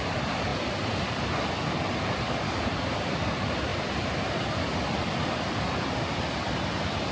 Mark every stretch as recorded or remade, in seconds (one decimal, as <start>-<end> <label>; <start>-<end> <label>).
0.0-7.1 recorded